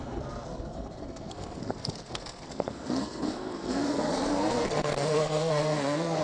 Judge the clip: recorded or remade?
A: remade